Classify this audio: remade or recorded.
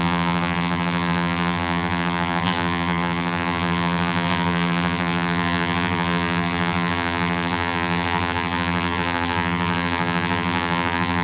remade